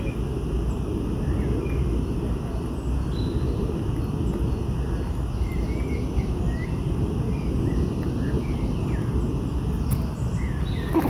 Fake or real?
real